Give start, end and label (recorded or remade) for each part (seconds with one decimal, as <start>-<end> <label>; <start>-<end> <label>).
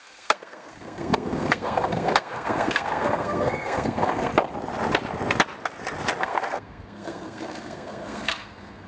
0.0-4.3 remade; 4.3-6.2 recorded; 6.2-8.9 remade